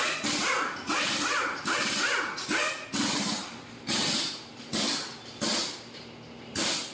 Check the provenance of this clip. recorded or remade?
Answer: recorded